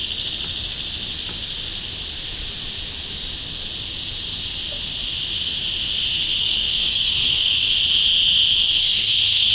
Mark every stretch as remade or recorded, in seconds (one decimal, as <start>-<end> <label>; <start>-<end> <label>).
0.0-6.4 recorded; 6.4-7.7 remade; 7.7-8.8 recorded; 8.8-9.5 remade